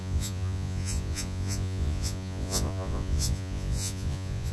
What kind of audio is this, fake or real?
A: fake